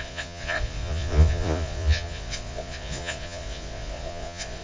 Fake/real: fake